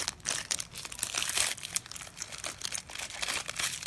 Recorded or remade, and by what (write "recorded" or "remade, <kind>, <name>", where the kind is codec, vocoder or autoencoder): remade, vocoder, BigVGAN v2